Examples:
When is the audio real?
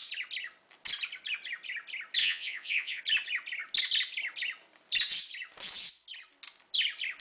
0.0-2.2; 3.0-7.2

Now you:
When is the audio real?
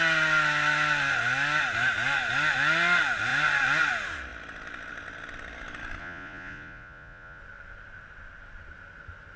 0.0-6.0; 7.4-9.4